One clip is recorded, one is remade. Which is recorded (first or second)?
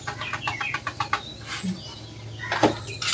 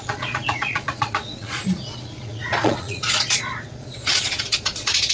first